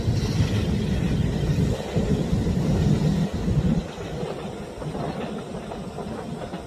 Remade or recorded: recorded